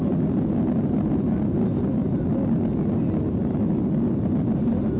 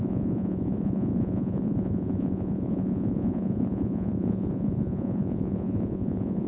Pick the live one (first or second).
first